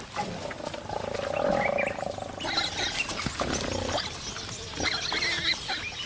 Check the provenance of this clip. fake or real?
real